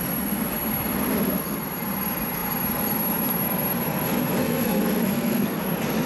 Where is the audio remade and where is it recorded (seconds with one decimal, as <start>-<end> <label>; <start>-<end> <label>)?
0.0-4.4 recorded; 4.4-5.6 remade; 5.6-6.1 recorded